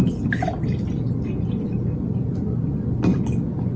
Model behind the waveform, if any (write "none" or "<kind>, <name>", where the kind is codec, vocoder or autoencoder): none